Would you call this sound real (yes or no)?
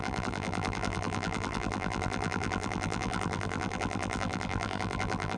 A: no